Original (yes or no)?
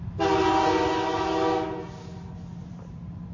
yes